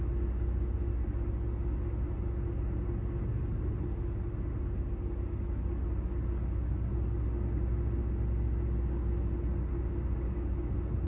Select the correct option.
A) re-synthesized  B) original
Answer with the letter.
B